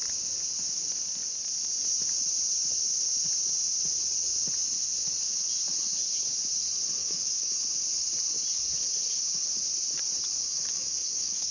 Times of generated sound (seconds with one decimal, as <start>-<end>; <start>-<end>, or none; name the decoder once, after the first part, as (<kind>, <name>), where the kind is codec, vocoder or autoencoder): 7.0-7.6 (codec, DAC); 10.4-11.5